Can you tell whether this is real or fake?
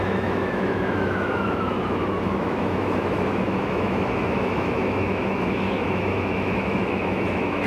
fake